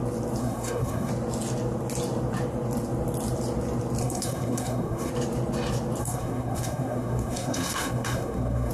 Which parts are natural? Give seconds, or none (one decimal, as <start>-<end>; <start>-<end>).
0.0-0.4; 1.1-4.0; 5.1-6.0